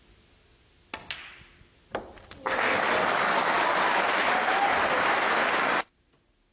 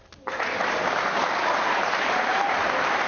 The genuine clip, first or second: first